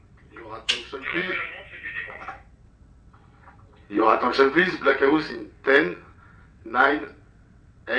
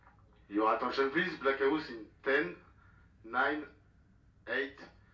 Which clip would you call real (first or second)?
second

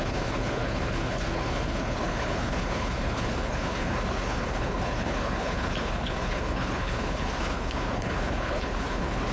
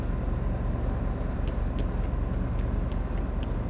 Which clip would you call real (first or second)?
second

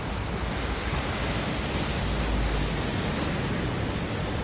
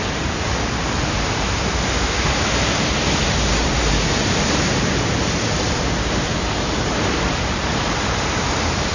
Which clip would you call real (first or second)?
first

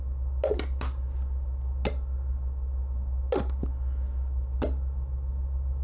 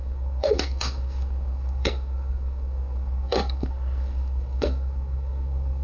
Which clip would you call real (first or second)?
first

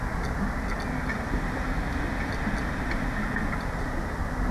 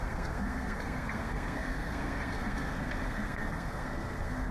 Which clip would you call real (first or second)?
first